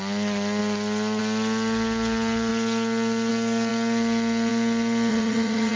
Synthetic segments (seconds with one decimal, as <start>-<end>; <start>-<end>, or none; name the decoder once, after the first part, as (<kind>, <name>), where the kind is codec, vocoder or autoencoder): 5.1-5.8 (vocoder, Vocos)